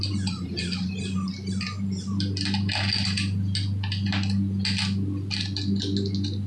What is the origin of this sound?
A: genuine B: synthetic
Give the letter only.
A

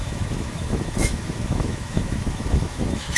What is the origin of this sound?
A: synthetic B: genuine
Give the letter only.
A